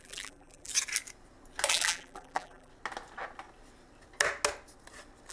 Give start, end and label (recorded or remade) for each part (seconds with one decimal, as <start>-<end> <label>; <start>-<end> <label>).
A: 0.0-0.7 remade; 0.7-1.7 recorded; 1.7-2.7 remade; 2.7-5.3 recorded

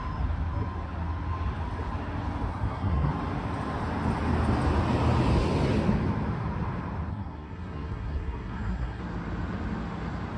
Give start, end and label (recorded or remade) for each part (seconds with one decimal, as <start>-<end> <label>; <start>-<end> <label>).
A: 0.0-2.5 recorded; 2.5-3.1 remade; 3.1-7.1 recorded; 7.1-9.0 remade; 9.0-10.4 recorded